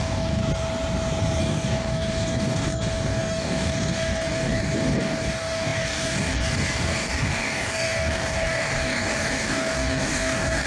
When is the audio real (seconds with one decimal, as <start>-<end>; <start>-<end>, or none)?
0.4-1.4